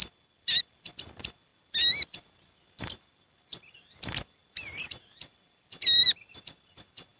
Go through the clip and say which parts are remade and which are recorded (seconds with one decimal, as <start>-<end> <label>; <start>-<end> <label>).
0.0-7.2 recorded